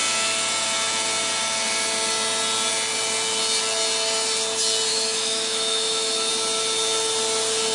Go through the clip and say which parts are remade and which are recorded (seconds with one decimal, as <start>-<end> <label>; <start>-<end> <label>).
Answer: 0.0-4.9 recorded; 4.9-6.3 remade; 6.3-7.7 recorded